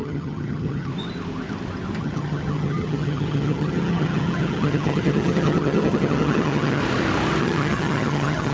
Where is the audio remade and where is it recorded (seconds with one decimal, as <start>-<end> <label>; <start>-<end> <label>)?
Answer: 0.0-0.9 remade; 0.9-2.0 recorded; 2.0-6.8 remade; 6.8-7.4 recorded; 7.4-8.5 remade